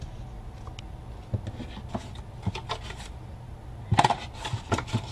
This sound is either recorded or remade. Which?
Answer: recorded